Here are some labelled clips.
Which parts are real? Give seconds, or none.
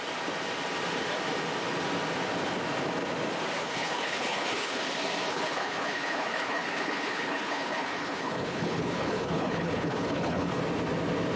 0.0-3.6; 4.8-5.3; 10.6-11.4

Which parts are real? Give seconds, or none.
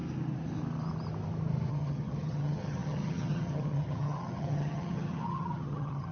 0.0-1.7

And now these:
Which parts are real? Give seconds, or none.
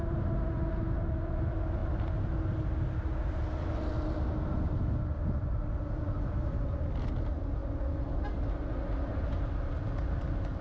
0.0-10.6